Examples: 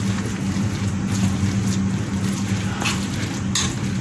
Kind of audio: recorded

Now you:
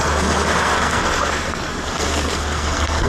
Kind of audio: remade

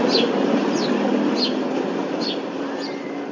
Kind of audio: recorded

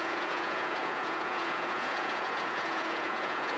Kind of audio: remade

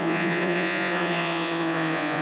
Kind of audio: remade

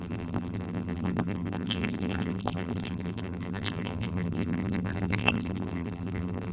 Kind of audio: remade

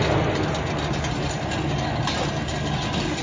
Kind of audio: recorded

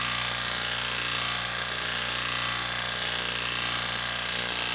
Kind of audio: recorded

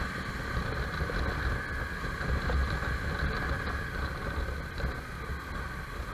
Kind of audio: recorded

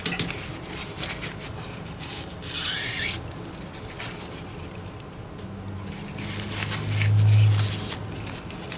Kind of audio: recorded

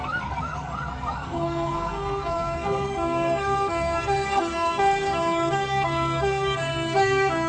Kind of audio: remade